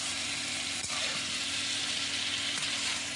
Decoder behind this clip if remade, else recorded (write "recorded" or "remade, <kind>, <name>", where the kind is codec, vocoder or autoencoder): remade, vocoder, BigVGAN v2